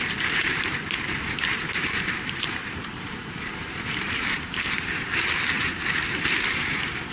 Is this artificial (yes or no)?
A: yes